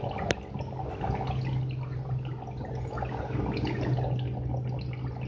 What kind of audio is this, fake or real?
real